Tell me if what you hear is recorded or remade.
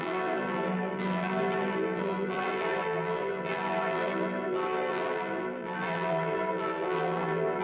remade